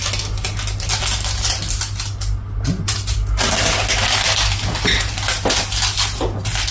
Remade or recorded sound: recorded